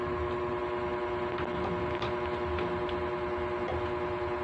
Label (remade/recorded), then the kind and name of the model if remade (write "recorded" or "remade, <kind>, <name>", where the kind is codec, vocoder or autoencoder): recorded